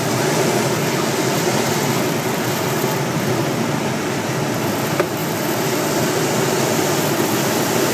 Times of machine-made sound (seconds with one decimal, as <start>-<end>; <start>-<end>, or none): none